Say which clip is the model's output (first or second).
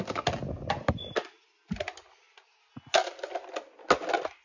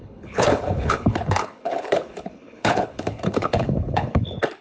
second